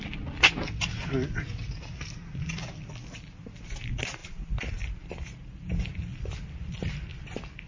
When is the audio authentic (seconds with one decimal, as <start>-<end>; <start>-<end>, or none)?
0.0-7.7

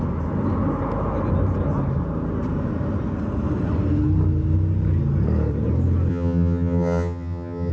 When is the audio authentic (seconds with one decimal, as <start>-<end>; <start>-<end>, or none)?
0.0-6.1

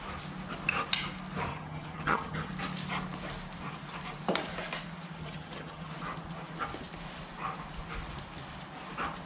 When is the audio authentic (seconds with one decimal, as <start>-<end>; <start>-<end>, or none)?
0.0-1.5; 2.5-5.2; 5.9-9.3

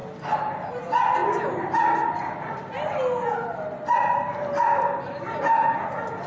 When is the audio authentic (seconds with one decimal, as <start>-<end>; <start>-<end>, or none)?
0.0-6.3

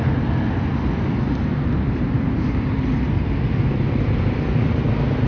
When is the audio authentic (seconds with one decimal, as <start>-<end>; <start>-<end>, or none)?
0.0-5.3

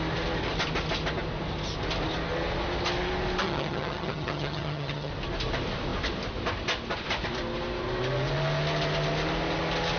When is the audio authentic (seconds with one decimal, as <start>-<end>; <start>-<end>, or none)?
0.0-3.4; 5.1-10.0

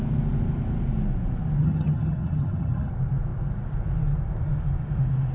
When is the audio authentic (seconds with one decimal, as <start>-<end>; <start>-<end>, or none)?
0.0-1.6; 2.9-5.3

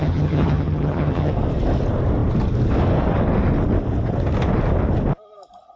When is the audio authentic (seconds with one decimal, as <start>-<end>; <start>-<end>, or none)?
1.3-5.8